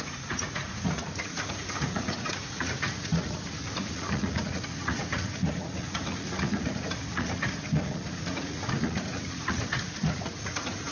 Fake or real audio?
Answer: fake